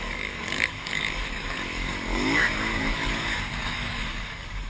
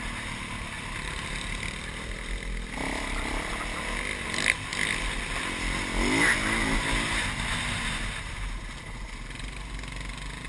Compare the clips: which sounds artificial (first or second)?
first